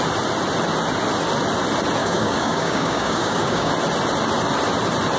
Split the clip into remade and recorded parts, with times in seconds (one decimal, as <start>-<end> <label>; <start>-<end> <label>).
0.0-2.0 recorded; 2.0-3.7 remade; 3.7-5.2 recorded